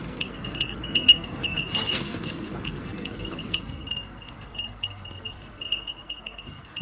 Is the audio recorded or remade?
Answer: remade